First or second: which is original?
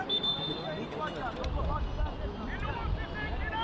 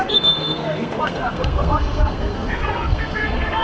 first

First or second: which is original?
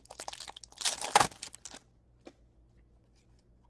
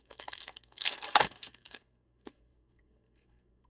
first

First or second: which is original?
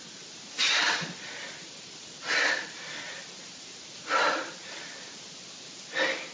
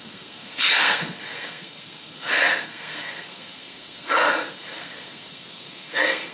first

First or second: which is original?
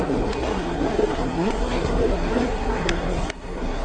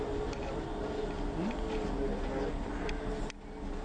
second